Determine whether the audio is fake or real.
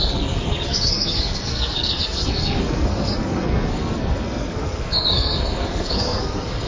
fake